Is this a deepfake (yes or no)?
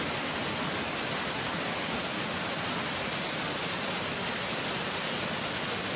no